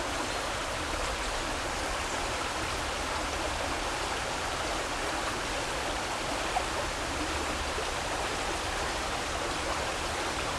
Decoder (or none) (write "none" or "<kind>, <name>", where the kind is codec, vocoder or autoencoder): none